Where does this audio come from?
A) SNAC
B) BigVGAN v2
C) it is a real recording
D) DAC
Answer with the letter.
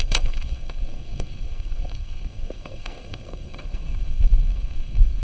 A